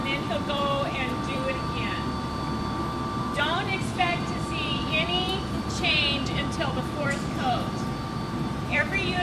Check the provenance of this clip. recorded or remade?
remade